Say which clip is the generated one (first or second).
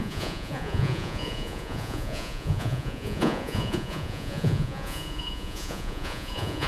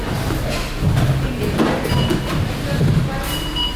first